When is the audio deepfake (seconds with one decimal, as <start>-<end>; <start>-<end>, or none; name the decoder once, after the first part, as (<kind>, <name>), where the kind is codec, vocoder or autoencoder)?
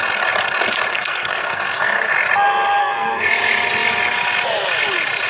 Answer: 0.9-2.1 (codec, SNAC); 2.8-3.3